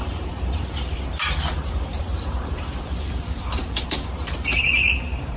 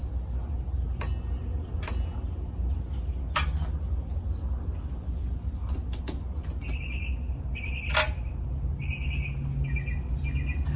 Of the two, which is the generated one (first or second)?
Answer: first